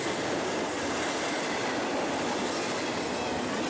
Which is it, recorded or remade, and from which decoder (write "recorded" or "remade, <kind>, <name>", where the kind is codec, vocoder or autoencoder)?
recorded